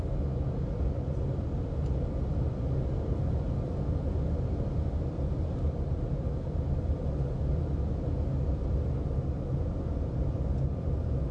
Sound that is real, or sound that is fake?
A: real